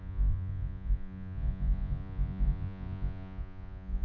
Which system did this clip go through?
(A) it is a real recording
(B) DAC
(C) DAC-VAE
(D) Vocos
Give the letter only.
D